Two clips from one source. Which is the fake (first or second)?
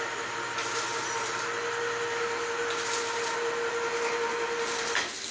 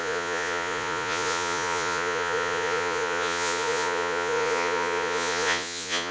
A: second